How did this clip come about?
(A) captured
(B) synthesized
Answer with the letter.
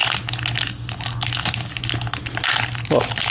A